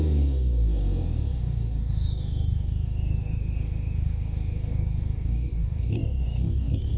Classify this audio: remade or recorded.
remade